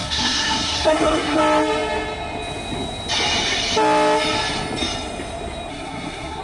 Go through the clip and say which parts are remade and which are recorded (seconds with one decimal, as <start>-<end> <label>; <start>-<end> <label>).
0.0-1.4 remade; 1.4-5.7 recorded; 5.7-6.4 remade